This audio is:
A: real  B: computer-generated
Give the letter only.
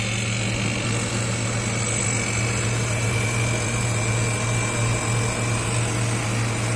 A